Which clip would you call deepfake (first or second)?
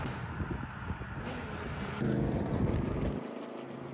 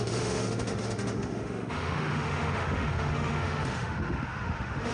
second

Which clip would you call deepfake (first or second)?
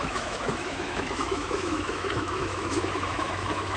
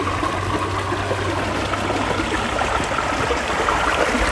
first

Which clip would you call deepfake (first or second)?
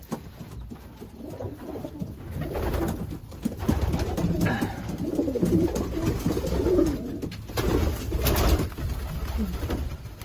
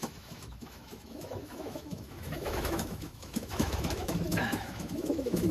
second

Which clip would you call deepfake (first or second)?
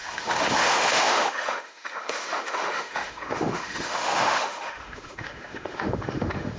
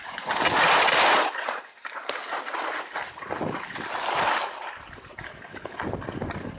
first